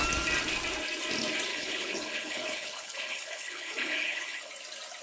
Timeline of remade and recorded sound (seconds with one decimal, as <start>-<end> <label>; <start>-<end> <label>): 0.0-1.5 recorded; 1.5-4.5 remade; 4.5-5.0 recorded